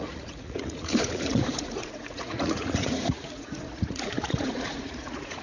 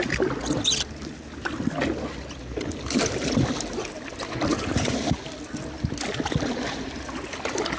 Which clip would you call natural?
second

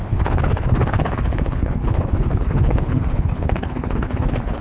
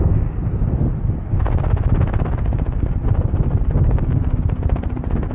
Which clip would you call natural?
second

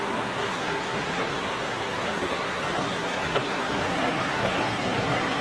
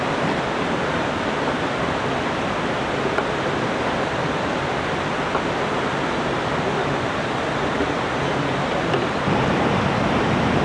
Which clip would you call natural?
second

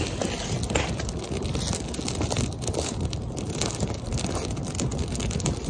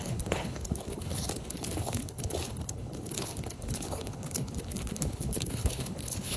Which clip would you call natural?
first